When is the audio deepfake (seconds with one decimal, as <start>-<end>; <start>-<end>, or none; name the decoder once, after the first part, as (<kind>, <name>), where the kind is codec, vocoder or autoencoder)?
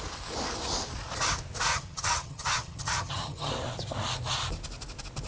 1.7-3.5 (vocoder, HiFi-GAN)